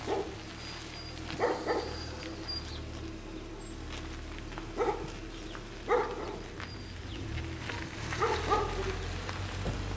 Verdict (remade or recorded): recorded